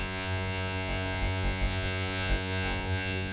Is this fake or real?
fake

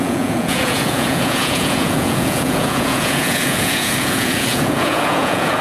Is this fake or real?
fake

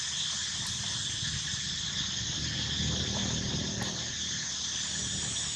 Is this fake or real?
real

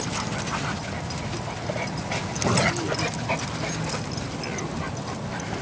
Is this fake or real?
real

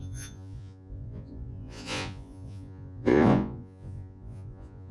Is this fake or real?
fake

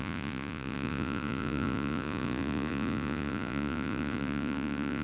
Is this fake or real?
fake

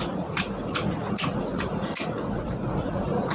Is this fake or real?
fake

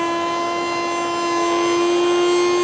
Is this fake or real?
real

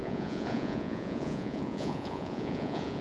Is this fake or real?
fake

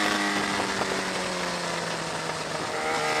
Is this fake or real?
real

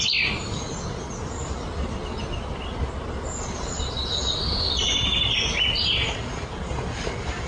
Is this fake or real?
real